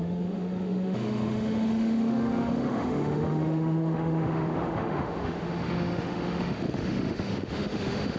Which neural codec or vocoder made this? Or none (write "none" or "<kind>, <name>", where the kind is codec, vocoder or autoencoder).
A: autoencoder, DAC-VAE